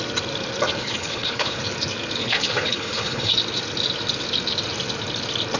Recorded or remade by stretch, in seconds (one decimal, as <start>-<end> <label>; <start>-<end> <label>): 0.0-0.8 recorded; 0.8-1.6 remade; 1.6-2.2 recorded; 2.2-3.3 remade; 3.3-5.6 recorded